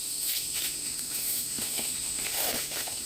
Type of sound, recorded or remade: remade